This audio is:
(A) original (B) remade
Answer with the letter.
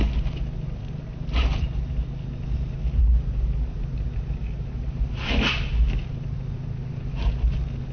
A